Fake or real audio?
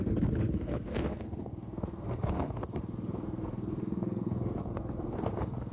fake